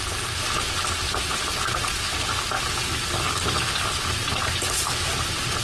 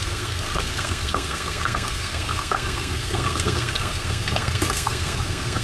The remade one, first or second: second